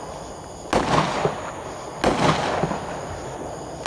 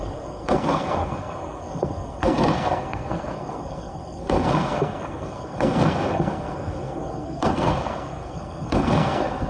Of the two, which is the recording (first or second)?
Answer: first